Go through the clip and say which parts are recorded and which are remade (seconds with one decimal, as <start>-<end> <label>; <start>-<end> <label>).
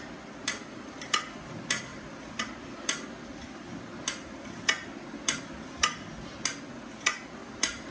0.0-7.9 recorded